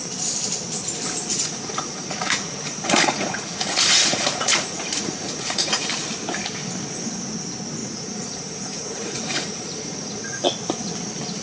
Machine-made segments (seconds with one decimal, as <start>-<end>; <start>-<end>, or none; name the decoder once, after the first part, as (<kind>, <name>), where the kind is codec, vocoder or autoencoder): 1.3-5.9 (vocoder, Vocos); 7.8-10.4

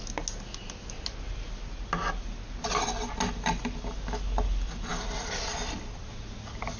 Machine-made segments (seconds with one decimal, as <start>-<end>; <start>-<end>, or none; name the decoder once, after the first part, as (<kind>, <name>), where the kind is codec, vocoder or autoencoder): 4.9-6.1 (vocoder, BigVGAN v2)

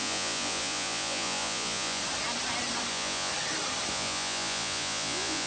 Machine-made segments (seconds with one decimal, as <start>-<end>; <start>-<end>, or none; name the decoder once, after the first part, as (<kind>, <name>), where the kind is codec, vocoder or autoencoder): 0.0-2.0 (vocoder, Vocos); 2.9-3.3; 3.9-5.5

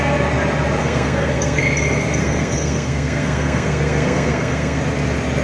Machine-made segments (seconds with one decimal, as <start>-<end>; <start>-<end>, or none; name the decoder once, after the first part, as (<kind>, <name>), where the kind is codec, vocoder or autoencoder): 0.8-1.6 (codec, SNAC); 2.2-4.8